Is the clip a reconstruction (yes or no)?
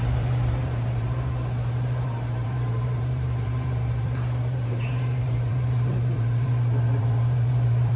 yes